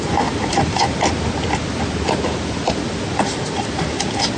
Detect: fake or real real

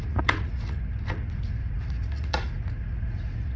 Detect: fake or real fake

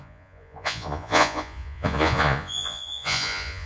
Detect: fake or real fake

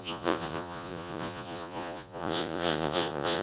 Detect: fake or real fake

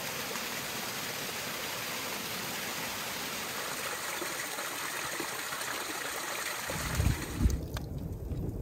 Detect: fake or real real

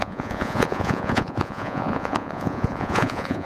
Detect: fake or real fake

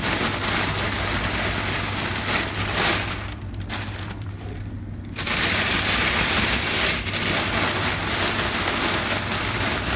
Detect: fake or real real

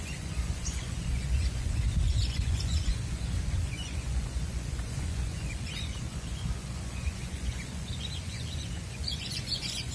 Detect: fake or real fake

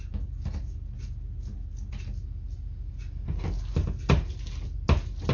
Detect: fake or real real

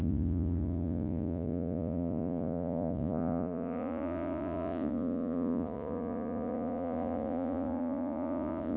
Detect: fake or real fake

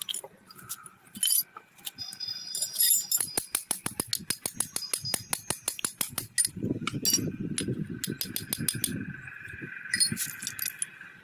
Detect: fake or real real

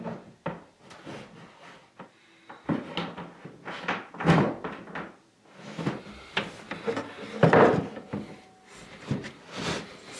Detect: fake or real real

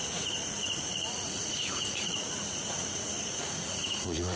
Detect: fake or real fake